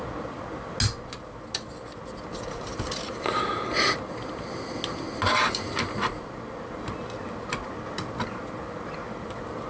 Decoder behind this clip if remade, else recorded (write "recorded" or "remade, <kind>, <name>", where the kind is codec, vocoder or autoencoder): recorded